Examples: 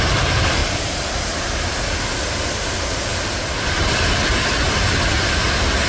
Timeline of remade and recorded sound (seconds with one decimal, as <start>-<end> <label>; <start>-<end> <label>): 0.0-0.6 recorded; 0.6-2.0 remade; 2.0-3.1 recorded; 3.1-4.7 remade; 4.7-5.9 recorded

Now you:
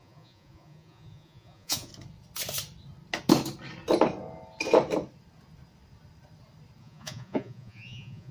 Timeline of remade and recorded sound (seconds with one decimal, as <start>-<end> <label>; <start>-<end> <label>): 0.0-1.9 remade; 1.9-6.8 recorded; 6.8-8.3 remade

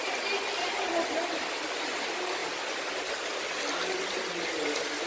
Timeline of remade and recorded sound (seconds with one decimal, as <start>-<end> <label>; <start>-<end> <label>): 0.0-5.1 recorded